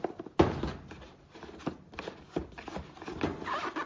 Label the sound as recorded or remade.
recorded